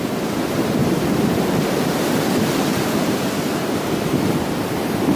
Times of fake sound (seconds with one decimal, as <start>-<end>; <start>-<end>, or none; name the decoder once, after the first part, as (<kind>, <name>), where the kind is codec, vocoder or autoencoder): 0.8-3.9 (vocoder, BigVGAN v2)